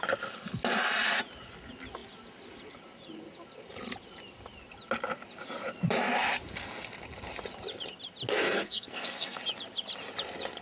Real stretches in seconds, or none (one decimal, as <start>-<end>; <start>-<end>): 0.0-8.3; 9.4-10.6